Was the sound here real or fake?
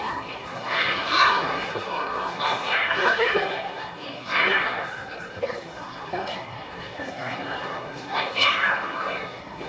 fake